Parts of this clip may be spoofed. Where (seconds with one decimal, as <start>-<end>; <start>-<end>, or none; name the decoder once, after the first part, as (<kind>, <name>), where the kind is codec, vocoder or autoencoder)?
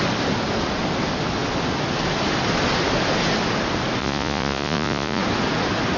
4.0-5.2 (vocoder, Vocos)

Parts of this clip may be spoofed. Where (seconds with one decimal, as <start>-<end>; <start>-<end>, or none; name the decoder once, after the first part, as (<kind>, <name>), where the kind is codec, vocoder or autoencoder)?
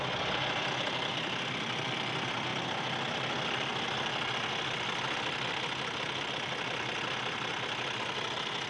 none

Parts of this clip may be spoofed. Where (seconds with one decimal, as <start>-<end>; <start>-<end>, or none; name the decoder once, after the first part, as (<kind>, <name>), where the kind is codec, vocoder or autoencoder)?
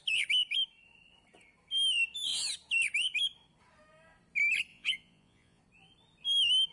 4.7-5.6 (vocoder, Vocos)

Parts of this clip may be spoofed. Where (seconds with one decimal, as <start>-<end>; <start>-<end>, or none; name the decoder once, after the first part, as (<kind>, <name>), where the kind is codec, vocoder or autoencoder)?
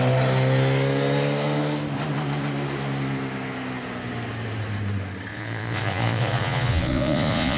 5.3-7.6 (vocoder, Vocos)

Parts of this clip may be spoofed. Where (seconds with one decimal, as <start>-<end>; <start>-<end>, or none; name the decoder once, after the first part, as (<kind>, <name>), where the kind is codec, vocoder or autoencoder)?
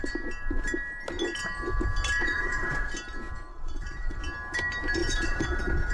2.2-2.9 (vocoder, Vocos); 3.5-4.2; 5.0-5.9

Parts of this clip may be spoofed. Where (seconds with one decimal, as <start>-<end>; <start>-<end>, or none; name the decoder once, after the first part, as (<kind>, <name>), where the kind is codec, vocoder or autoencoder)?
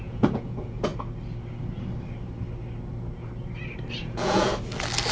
0.0-0.9 (vocoder, Vocos); 4.0-4.5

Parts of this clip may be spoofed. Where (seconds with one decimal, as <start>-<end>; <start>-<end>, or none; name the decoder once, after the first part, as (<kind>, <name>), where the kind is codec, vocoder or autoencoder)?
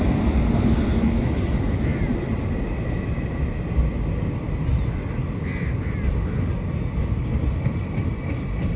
none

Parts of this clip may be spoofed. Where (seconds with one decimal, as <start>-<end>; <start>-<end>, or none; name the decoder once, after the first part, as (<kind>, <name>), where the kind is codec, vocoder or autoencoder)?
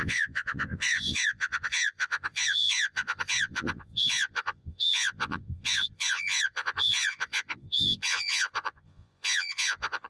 0.0-10.1 (vocoder, Vocos)